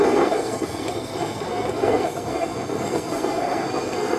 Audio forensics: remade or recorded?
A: remade